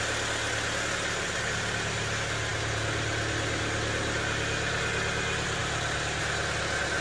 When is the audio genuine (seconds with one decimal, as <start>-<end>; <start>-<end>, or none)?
0.0-7.0